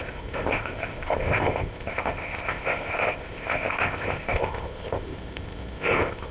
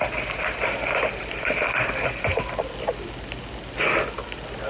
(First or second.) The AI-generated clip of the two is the first